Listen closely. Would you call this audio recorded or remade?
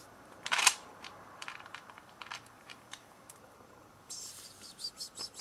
remade